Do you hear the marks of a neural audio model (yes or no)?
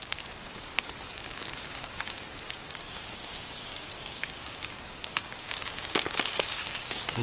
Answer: yes